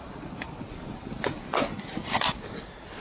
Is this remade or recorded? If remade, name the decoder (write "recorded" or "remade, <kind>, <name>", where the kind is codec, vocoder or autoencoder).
recorded